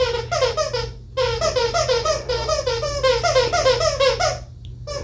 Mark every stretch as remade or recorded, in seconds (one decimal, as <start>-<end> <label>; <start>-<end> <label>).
0.0-1.6 recorded; 1.6-2.9 remade; 2.9-5.0 recorded